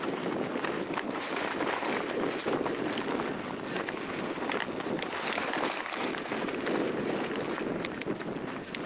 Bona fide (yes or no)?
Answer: yes